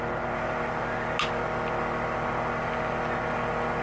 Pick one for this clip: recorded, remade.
recorded